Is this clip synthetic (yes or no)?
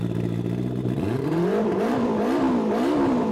yes